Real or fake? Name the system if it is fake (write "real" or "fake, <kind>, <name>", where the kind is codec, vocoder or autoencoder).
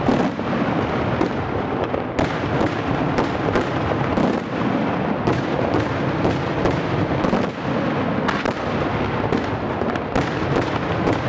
real